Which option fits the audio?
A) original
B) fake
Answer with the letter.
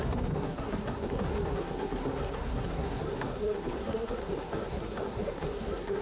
B